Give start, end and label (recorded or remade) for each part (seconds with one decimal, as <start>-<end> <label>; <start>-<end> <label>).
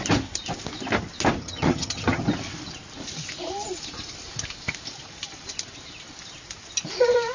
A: 0.0-1.4 recorded; 1.4-2.2 remade; 2.2-7.3 recorded